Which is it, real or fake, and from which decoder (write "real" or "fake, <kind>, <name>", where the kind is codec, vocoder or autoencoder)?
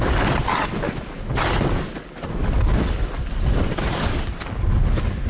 real